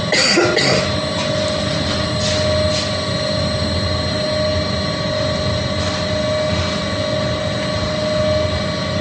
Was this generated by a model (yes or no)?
no